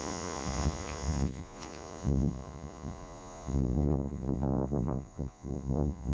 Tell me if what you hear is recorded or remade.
remade